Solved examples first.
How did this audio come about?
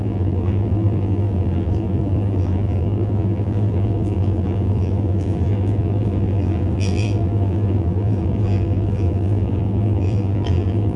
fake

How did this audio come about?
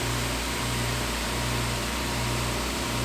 fake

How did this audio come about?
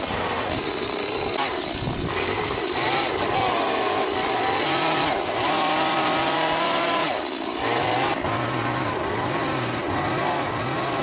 real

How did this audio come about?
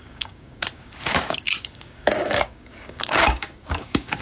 fake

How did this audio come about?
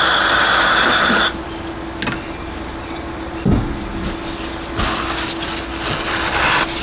real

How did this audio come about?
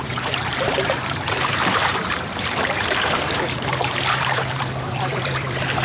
fake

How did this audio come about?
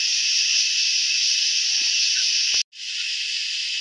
real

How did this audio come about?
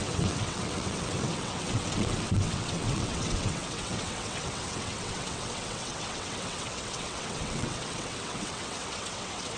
fake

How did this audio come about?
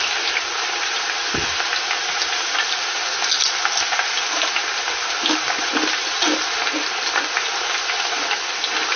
real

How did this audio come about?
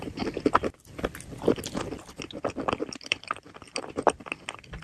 fake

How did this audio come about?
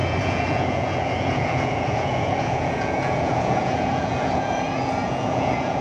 fake